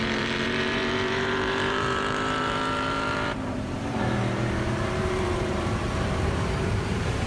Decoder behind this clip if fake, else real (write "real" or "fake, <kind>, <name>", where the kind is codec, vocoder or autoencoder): fake, vocoder, BigVGAN v2